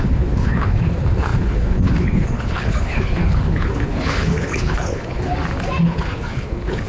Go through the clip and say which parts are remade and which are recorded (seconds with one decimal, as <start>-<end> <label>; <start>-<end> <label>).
0.0-5.3 remade; 5.3-5.8 recorded; 5.8-6.9 remade